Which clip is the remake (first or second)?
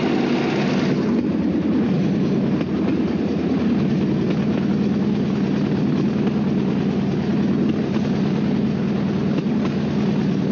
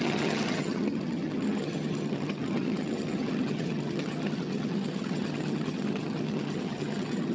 second